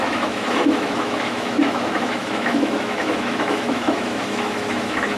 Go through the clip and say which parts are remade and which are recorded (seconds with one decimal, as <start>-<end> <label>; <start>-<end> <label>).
0.0-5.2 remade